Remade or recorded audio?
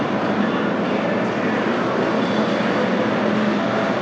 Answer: recorded